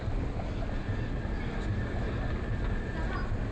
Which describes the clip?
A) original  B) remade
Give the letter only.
A